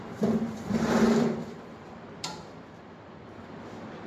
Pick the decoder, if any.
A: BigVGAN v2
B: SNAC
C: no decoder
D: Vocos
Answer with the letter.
A